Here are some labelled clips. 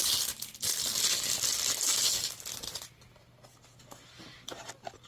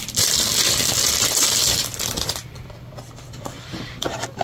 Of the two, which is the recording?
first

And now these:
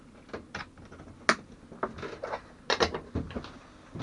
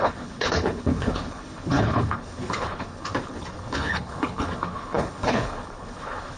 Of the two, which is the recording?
first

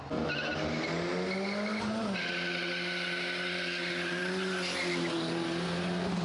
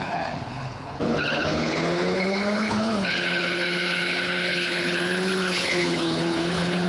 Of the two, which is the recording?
first